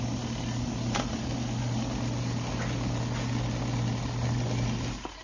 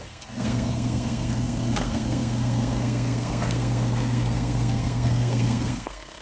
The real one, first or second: first